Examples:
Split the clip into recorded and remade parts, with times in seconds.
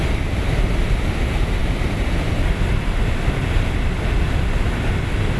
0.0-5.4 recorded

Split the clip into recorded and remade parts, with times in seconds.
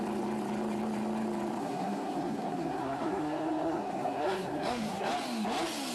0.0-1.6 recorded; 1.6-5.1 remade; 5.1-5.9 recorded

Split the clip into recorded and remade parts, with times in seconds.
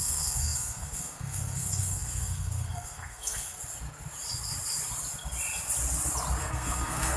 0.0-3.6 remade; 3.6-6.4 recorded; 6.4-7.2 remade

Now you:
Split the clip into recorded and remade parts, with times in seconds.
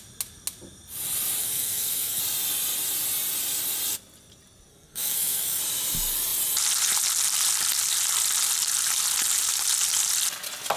0.0-1.4 recorded; 1.4-2.2 remade; 2.2-4.7 recorded; 4.7-5.6 remade; 5.6-10.8 recorded